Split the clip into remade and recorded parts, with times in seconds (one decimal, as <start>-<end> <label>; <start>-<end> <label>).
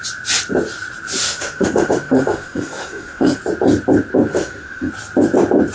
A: 0.0-1.2 recorded; 1.2-3.4 remade; 3.4-4.3 recorded; 4.3-4.9 remade; 4.9-5.7 recorded